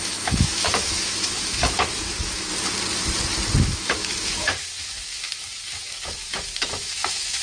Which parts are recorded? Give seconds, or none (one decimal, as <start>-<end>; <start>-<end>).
2.5-3.6